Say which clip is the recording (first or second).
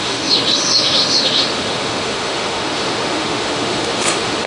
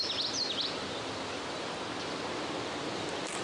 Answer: second